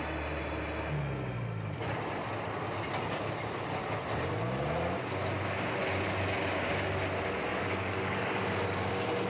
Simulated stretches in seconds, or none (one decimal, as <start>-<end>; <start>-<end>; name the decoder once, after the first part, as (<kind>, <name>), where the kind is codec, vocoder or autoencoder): 7.5-8.9 (codec, DAC)